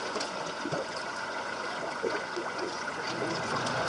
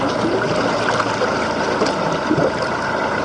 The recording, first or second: second